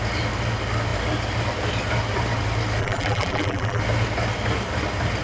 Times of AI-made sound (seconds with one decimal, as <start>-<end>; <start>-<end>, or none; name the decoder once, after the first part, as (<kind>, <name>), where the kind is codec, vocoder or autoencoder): 2.8-3.8 (vocoder, BigVGAN v2)